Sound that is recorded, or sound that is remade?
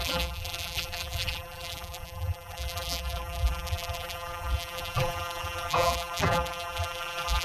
remade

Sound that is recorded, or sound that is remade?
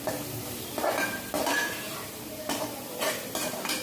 remade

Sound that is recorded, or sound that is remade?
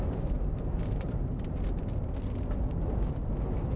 recorded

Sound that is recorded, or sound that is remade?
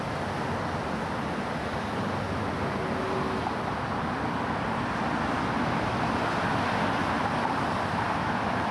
recorded